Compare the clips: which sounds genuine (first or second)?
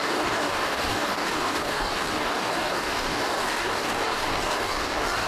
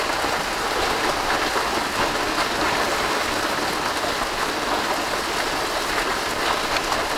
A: second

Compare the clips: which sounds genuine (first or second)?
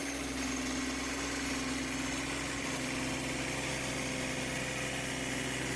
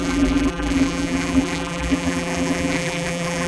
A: first